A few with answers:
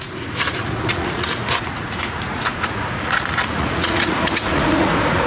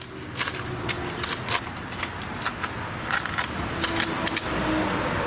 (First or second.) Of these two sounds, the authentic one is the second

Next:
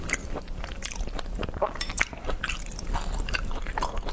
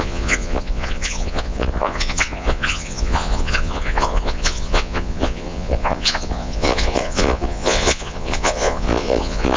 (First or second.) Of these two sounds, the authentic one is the first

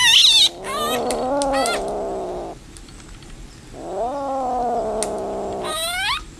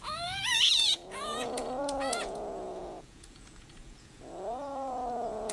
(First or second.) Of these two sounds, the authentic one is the first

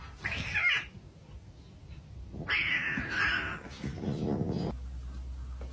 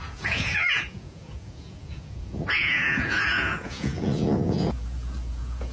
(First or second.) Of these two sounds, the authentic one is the first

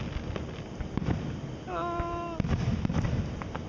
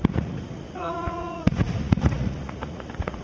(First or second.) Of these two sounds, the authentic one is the first